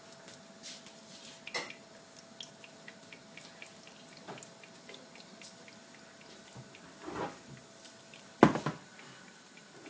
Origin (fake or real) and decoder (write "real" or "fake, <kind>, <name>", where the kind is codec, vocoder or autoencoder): real